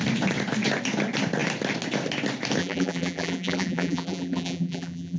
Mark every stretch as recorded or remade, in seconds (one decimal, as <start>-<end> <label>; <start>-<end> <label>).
0.0-2.6 recorded; 2.6-5.2 remade